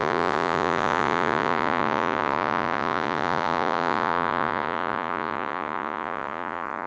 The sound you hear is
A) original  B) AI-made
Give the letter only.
B